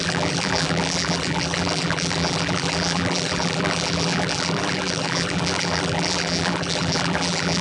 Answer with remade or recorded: remade